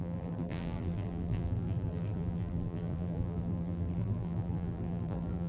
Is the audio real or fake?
fake